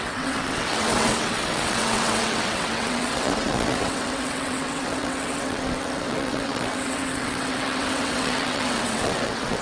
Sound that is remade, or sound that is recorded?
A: remade